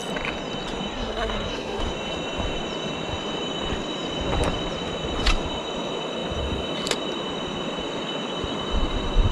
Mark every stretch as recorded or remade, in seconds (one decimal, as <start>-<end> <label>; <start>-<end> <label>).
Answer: 0.0-0.9 recorded; 0.9-1.8 remade; 1.8-9.3 recorded